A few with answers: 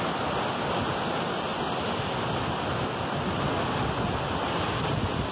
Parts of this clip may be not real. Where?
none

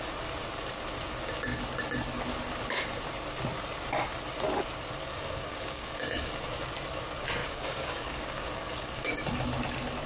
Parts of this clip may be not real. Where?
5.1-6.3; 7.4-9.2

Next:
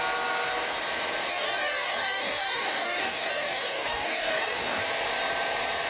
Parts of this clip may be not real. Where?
1.3-4.8